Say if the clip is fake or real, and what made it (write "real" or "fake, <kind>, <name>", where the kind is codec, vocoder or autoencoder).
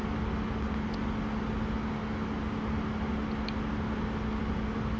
real